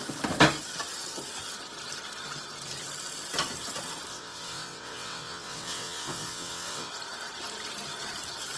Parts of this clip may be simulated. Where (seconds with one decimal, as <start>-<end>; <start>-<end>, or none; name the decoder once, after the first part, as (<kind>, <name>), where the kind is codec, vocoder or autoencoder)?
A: 4.1-6.9 (vocoder, WaveNeXt)

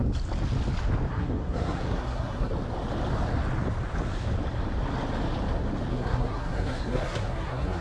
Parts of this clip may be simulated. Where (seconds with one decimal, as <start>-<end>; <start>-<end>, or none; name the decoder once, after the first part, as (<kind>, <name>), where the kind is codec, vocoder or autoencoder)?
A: 1.1-2.5 (codec, SNAC); 5.9-7.8

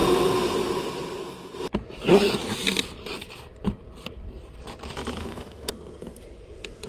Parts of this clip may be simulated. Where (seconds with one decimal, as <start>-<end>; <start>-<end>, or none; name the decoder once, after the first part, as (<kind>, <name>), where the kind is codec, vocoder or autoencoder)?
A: 5.2-5.7 (autoencoder, DAC-VAE)

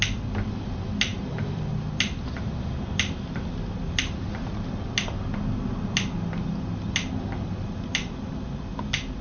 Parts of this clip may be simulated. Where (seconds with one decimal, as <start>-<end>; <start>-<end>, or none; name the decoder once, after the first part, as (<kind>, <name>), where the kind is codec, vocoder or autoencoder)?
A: 1.1-1.7 (vocoder, BigVGAN v2)

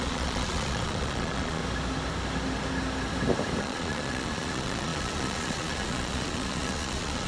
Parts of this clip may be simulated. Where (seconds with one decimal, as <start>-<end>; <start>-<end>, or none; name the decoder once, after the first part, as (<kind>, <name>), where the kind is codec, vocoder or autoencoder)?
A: 0.0-1.6 (vocoder, Vocos); 3.6-7.3